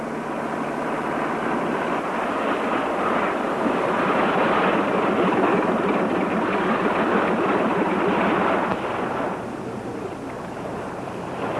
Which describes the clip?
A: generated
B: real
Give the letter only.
B